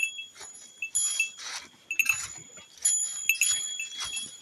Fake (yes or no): no